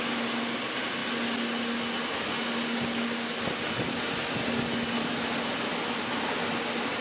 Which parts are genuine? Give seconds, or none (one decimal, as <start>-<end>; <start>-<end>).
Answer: 0.0-7.0

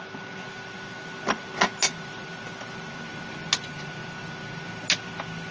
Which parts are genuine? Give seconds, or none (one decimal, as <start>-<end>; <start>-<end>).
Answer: 0.0-5.5

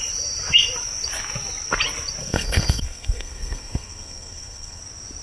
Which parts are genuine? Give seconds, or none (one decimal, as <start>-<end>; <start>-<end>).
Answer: 0.0-2.2; 4.8-5.2

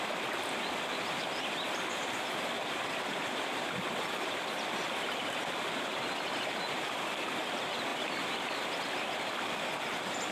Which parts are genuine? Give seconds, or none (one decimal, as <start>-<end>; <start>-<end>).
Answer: 0.0-10.3

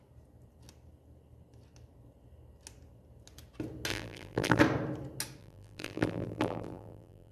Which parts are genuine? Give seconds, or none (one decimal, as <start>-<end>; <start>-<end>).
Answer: 0.0-3.9; 4.6-5.4

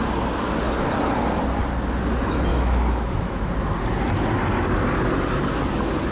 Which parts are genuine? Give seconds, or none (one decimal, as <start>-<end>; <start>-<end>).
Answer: 0.0-2.5; 3.5-6.1